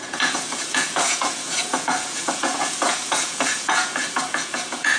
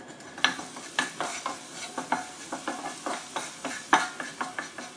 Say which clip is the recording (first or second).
second